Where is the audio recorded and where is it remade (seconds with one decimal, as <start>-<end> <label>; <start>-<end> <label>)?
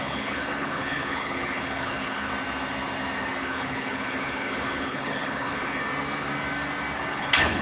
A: 0.0-2.3 remade; 2.3-3.4 recorded; 3.4-5.8 remade; 5.8-7.1 recorded; 7.1-7.6 remade